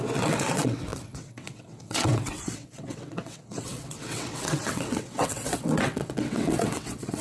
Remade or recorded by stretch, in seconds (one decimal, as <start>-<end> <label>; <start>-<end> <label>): 0.0-7.2 remade